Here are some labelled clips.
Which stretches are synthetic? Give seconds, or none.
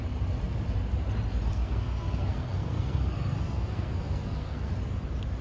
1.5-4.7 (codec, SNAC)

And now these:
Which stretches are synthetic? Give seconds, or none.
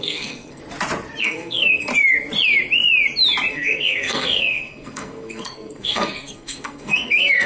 0.0-0.6 (codec, SNAC); 1.2-1.9; 3.5-7.5